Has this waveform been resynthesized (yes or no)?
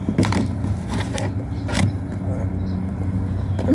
yes